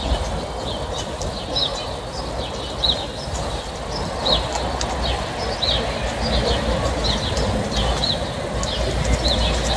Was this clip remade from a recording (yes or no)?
no